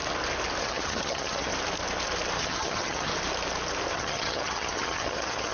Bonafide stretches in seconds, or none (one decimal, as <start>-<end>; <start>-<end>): 0.0-0.6; 1.5-2.4; 3.1-3.9